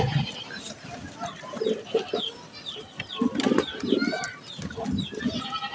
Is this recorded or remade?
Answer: recorded